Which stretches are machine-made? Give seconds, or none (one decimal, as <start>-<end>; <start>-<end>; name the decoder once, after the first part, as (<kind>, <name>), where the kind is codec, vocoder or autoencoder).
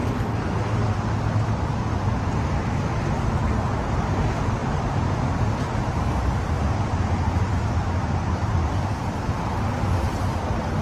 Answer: none